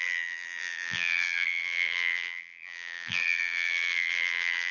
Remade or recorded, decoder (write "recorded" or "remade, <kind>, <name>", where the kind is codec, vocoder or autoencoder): remade, vocoder, BigVGAN v2